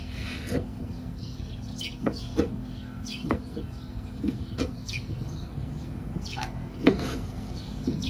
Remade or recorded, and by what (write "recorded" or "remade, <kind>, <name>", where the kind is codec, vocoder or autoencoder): remade, codec, SNAC